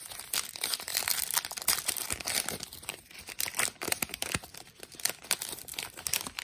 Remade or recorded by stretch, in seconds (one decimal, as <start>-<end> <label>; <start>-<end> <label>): 0.0-6.4 remade